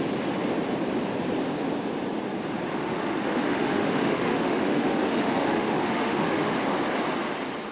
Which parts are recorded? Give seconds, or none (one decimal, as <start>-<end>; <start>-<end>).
0.0-2.7; 6.5-7.7